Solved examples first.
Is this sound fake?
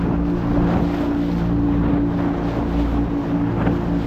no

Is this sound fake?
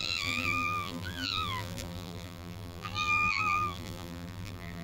yes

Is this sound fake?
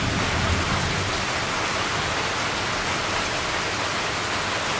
no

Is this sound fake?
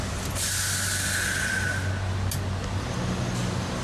no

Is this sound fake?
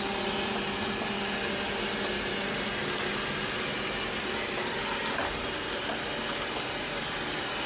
no